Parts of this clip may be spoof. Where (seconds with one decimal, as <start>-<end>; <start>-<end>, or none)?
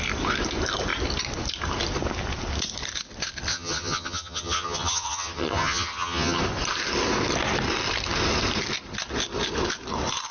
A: 3.5-6.4